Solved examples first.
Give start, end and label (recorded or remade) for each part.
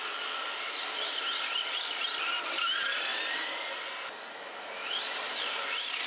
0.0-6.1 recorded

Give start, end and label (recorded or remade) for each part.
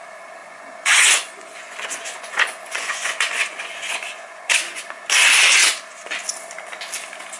0.0-0.4 recorded; 0.4-4.8 remade; 4.8-7.4 recorded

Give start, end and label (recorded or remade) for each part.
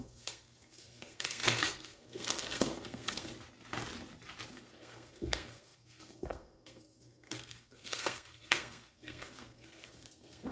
0.0-3.3 remade; 3.3-4.5 recorded; 4.5-10.5 remade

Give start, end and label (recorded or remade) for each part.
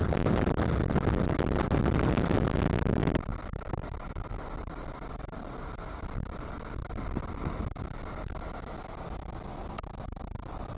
0.0-10.8 recorded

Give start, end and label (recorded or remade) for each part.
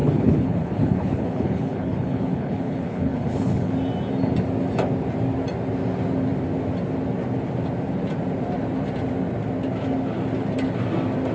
0.0-3.7 remade; 3.7-11.3 recorded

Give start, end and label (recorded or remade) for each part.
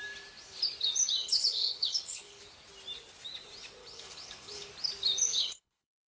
0.0-1.2 recorded; 1.2-2.4 remade; 2.4-3.8 recorded; 3.8-4.7 remade; 4.7-5.3 recorded; 5.3-6.1 remade